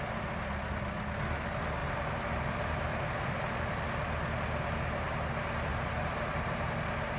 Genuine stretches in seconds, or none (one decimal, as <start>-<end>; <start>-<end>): 0.0-1.8; 3.6-5.7; 6.6-7.2